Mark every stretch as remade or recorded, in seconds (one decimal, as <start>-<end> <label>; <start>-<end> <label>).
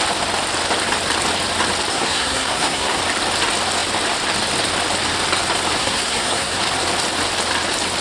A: 0.0-1.9 recorded; 1.9-3.0 remade; 3.0-5.8 recorded; 5.8-6.6 remade; 6.6-8.0 recorded